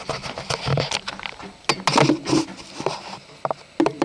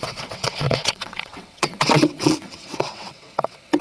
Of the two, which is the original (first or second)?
first